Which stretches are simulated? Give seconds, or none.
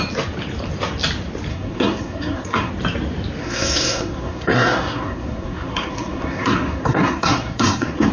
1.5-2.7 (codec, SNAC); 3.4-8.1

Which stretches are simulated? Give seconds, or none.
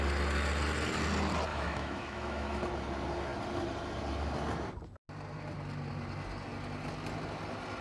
1.5-2.6 (autoencoder, DAC-VAE)